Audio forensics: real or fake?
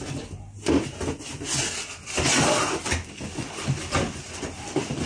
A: real